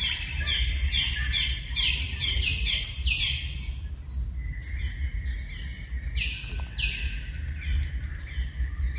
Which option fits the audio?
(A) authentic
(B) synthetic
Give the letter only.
A